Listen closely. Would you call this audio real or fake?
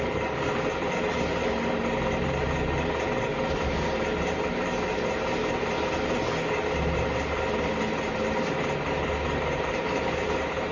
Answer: real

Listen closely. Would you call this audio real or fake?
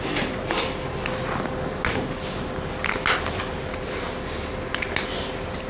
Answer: real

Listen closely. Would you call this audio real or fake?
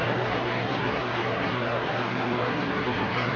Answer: fake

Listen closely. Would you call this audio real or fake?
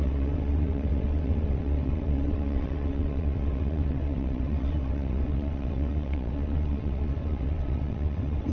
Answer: fake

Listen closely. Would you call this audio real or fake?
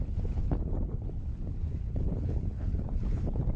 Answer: fake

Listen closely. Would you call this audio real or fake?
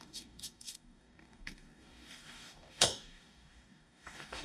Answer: fake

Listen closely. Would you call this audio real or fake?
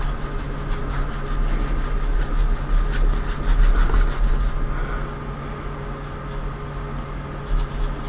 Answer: real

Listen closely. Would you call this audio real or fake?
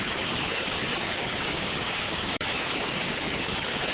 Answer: fake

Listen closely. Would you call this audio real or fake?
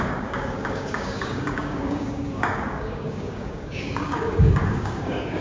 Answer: fake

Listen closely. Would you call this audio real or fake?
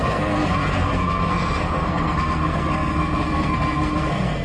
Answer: fake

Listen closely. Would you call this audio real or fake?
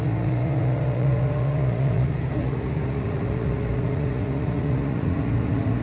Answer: fake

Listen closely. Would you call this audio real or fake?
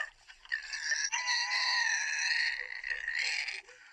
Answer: real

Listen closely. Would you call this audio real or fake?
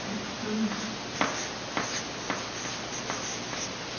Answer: real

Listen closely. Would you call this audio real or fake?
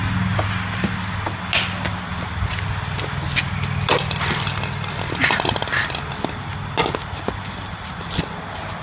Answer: real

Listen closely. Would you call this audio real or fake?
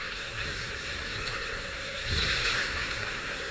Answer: fake